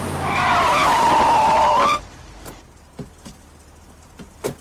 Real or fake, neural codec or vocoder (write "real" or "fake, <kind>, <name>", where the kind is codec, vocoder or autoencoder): real